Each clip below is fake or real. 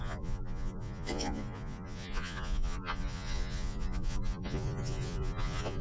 fake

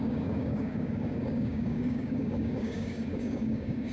fake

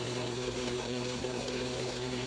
fake